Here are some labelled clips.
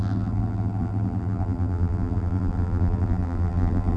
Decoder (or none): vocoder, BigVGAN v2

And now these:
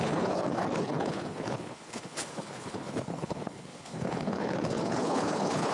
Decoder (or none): codec, HILCodec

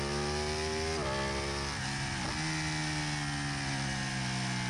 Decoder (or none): none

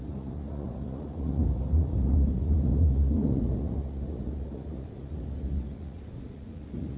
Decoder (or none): vocoder, Vocos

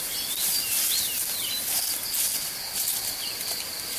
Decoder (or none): none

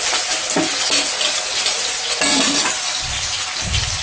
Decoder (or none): none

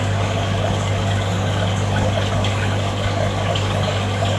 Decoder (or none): codec, DAC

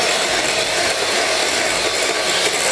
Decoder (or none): none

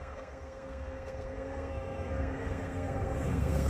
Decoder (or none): codec, SNAC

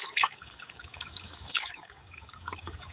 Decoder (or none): codec, DAC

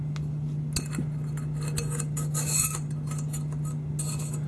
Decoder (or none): none